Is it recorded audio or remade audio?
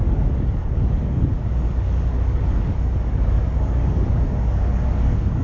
remade